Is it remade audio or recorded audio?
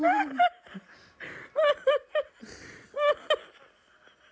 recorded